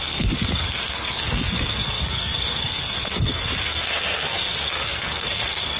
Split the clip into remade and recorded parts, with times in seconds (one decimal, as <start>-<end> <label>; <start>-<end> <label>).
0.0-5.8 remade